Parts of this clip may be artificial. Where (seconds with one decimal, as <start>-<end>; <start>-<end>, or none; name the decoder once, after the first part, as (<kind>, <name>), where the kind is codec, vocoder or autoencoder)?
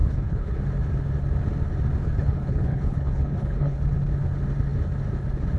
0.0-0.6 (codec, HILCodec); 2.0-3.8